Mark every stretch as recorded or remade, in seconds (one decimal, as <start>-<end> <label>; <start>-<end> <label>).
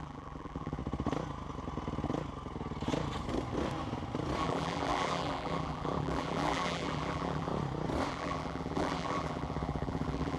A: 0.0-0.8 remade; 0.8-4.4 recorded; 4.4-7.5 remade; 7.5-8.1 recorded; 8.1-10.4 remade